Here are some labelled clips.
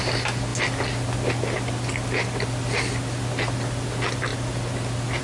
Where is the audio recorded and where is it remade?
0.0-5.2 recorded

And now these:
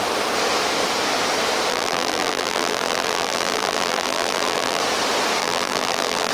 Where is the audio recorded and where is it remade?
0.0-1.7 recorded; 1.7-4.8 remade; 4.8-5.4 recorded; 5.4-6.3 remade

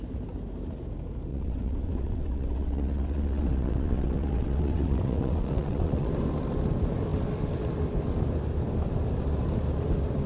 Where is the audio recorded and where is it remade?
0.0-1.3 recorded; 1.3-6.1 remade; 6.1-10.3 recorded

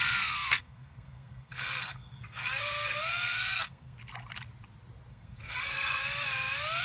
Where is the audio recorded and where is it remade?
0.0-4.0 remade; 4.0-5.1 recorded; 5.1-6.0 remade; 6.0-6.8 recorded

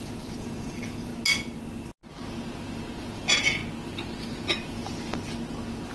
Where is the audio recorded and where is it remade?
0.0-1.1 remade; 1.1-3.0 recorded; 3.0-3.6 remade; 3.6-4.2 recorded; 4.2-4.8 remade; 4.8-5.9 recorded